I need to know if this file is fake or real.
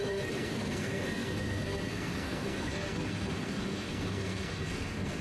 fake